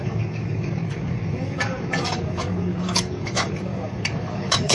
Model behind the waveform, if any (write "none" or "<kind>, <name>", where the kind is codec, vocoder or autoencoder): codec, DAC